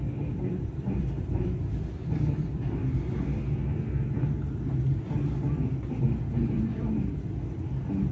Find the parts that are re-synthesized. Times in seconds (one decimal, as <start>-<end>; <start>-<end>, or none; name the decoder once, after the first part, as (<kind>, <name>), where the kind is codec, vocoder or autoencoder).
0.0-2.8 (vocoder, BigVGAN v2); 6.0-8.1